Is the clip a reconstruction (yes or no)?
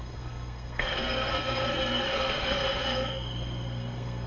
yes